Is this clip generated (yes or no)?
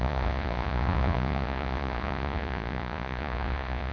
yes